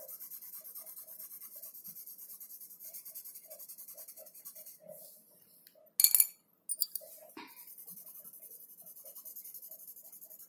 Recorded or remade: recorded